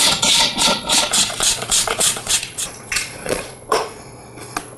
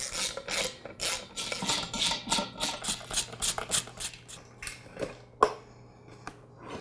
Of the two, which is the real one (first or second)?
second